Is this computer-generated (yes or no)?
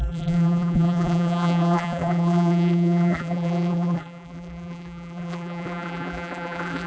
yes